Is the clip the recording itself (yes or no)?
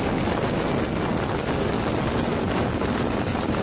yes